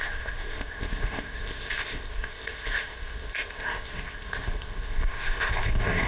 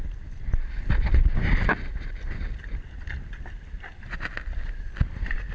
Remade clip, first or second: first